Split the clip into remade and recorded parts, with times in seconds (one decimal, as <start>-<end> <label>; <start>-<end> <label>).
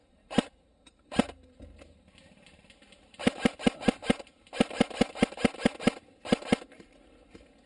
0.0-1.6 remade; 1.6-7.7 recorded